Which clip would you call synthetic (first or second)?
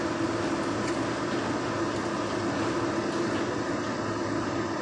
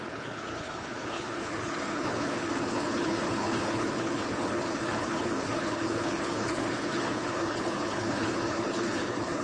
second